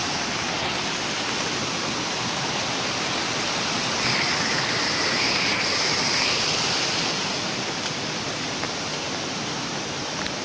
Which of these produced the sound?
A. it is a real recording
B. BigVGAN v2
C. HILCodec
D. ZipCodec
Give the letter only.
A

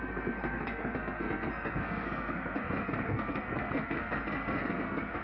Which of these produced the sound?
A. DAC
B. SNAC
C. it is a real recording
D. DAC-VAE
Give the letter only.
B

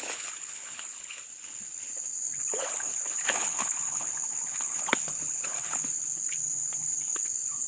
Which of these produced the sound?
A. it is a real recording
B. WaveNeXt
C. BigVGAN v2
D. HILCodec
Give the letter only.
D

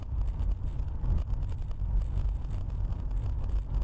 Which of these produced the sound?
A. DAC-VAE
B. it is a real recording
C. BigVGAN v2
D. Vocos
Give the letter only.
C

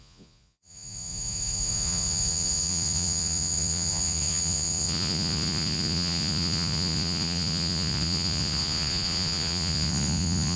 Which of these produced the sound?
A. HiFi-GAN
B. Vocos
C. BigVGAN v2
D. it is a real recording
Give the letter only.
B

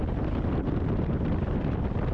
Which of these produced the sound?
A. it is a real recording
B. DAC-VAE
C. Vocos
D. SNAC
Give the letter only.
A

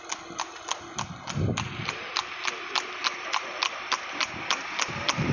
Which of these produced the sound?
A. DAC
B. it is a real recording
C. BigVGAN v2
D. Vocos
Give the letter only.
B